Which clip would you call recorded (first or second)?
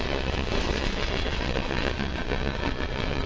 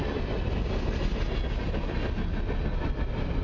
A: second